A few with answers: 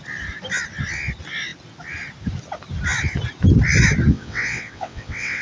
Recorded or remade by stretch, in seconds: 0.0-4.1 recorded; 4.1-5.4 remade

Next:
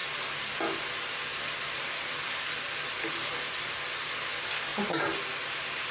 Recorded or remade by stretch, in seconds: 0.0-0.9 remade; 0.9-1.3 recorded; 1.3-4.1 remade; 4.1-5.9 recorded

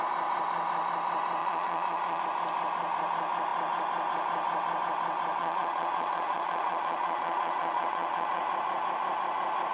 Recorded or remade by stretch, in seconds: 0.0-1.4 recorded; 1.4-2.2 remade; 2.2-5.4 recorded; 5.4-8.4 remade; 8.4-9.7 recorded

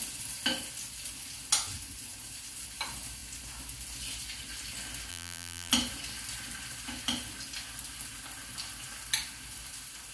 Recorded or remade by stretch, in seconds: 0.0-5.1 recorded; 5.1-5.7 remade; 5.7-10.1 recorded

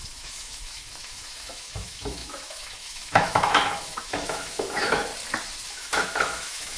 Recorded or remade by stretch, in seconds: 0.0-5.1 remade; 5.1-5.7 recorded; 5.7-6.8 remade